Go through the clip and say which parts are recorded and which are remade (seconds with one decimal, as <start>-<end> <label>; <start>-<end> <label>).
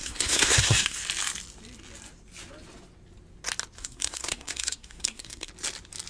0.0-1.0 remade; 1.0-3.8 recorded; 3.8-5.5 remade; 5.5-6.1 recorded